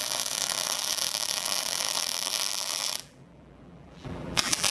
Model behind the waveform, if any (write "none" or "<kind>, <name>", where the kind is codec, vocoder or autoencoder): vocoder, BigVGAN v2